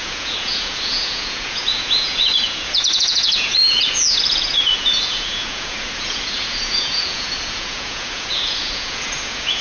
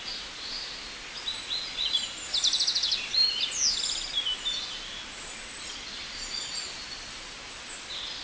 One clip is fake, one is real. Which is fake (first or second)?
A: first